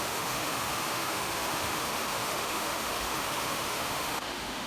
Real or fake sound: fake